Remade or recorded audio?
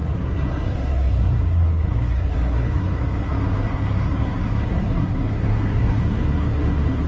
remade